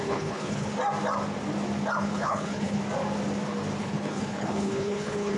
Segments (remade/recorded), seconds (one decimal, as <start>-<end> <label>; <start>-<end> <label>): 0.0-0.7 remade; 0.7-2.0 recorded; 2.0-2.8 remade; 2.8-3.8 recorded; 3.8-5.4 remade